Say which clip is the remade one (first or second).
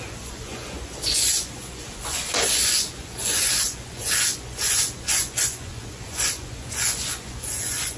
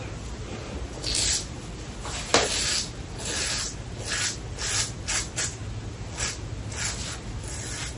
first